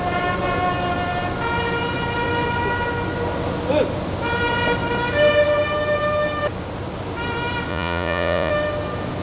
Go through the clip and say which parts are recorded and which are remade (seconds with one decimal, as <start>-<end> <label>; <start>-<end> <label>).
0.0-7.7 recorded; 7.7-8.5 remade; 8.5-9.2 recorded

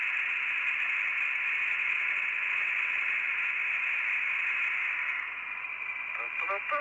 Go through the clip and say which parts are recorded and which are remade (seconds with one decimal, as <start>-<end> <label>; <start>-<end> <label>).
0.0-1.7 recorded; 1.7-3.3 remade; 3.3-6.8 recorded

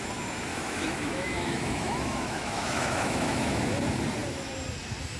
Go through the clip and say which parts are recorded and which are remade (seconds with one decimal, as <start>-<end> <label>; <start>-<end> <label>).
0.0-0.5 recorded; 0.5-3.6 remade; 3.6-5.2 recorded

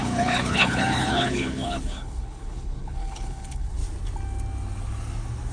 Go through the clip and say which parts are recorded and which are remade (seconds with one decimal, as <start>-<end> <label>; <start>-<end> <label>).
0.0-3.8 remade; 3.8-5.5 recorded

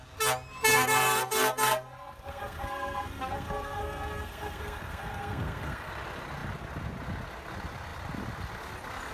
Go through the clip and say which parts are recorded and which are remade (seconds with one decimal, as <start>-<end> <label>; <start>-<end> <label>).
0.0-0.7 recorded; 0.7-5.9 remade; 5.9-9.1 recorded

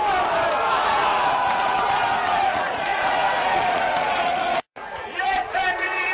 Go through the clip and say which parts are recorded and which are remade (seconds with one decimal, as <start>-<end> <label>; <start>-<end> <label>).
0.0-0.7 recorded; 0.7-6.1 remade